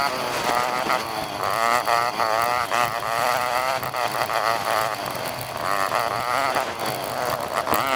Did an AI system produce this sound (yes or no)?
no